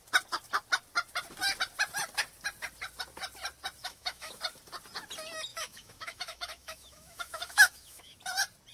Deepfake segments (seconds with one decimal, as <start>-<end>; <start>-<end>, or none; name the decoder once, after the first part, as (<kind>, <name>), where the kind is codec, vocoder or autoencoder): 3.8-4.4 (autoencoder, DAC-VAE); 5.5-8.2